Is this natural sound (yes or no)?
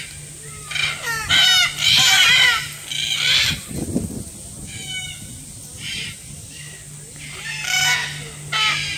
yes